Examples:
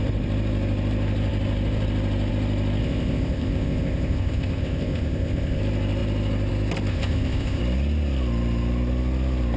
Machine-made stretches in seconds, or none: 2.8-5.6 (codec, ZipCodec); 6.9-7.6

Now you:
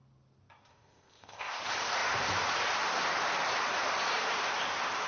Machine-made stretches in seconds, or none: 0.7-1.6 (codec, ZipCodec)

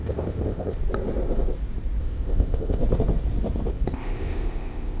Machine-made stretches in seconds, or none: 0.0-0.8 (codec, ZipCodec); 2.0-2.8; 3.7-5.0